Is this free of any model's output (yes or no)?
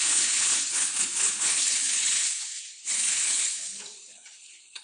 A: no